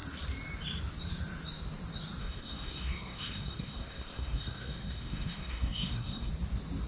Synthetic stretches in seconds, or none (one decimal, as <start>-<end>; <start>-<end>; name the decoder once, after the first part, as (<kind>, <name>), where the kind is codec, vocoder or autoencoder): 2.2-6.3 (codec, SNAC)